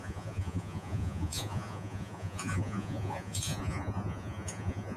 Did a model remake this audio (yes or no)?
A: yes